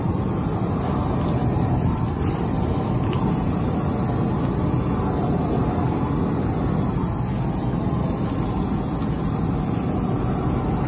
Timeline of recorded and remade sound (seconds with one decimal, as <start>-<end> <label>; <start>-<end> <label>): 0.0-1.4 recorded; 1.4-3.9 remade; 3.9-10.9 recorded